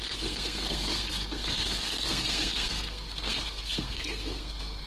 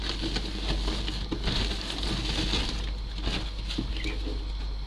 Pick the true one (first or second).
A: second